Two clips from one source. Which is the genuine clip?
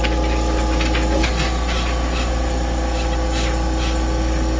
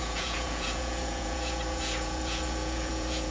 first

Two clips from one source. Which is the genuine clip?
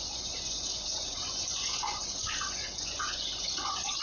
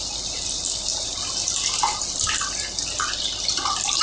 second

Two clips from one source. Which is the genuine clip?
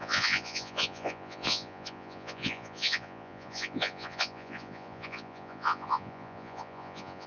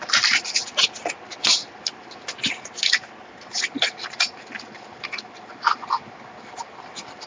second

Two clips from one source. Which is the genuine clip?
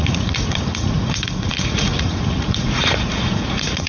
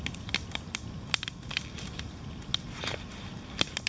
second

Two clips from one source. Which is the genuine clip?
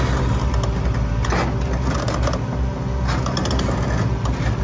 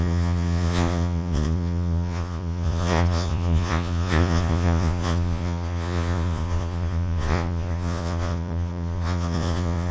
first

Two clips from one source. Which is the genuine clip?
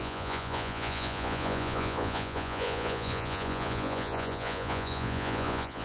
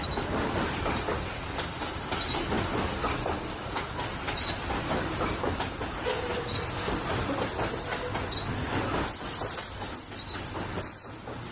second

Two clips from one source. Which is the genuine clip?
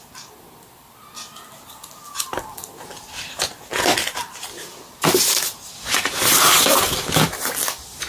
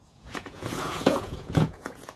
first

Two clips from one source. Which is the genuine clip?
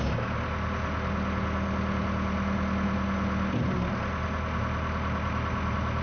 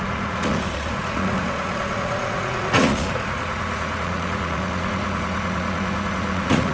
first